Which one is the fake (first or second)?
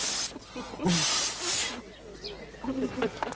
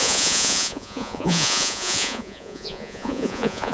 second